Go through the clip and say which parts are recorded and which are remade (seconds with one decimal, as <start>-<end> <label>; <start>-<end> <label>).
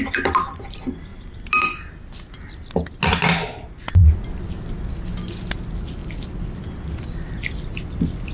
0.0-8.3 recorded